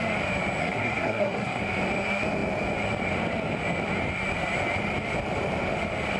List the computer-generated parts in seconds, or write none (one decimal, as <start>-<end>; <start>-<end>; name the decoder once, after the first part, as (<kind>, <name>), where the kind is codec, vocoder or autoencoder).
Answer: 0.6-1.6 (codec, SNAC)